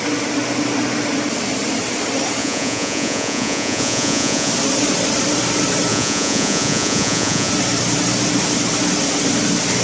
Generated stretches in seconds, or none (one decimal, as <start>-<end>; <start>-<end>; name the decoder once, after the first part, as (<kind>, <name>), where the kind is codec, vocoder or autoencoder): 2.4-4.5 (vocoder, Vocos); 5.9-7.5